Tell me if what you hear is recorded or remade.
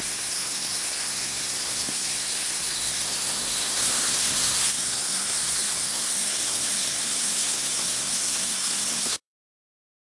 remade